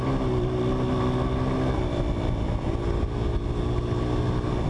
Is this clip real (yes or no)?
yes